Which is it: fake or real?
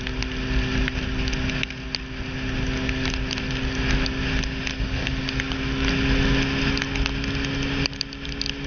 real